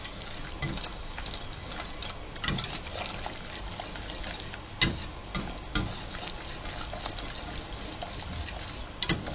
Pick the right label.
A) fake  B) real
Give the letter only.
B